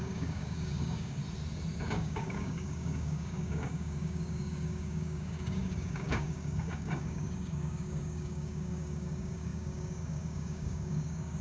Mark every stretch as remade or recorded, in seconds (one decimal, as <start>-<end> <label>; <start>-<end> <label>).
0.0-1.2 remade; 1.2-1.8 recorded; 1.8-11.4 remade